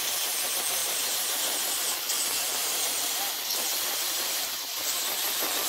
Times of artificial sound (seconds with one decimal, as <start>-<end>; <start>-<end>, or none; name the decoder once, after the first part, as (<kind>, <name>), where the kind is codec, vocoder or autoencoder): 0.8-2.0 (vocoder, BigVGAN v2); 2.6-3.2; 4.1-4.7